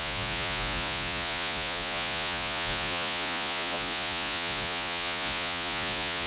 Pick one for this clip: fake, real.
fake